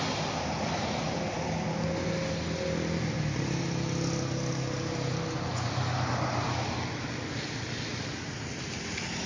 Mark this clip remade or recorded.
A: recorded